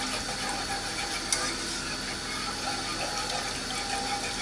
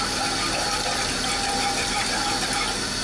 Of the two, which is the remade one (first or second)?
second